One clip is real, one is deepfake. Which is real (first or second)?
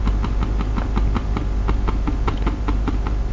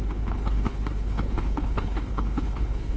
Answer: first